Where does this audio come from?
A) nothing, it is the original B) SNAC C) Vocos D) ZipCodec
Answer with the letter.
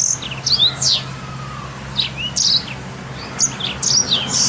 A